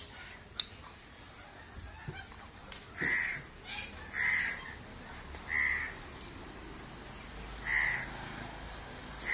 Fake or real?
real